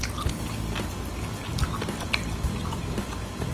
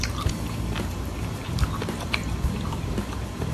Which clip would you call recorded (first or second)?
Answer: first